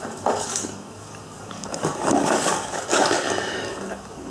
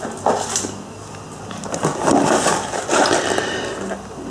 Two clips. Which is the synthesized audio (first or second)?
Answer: first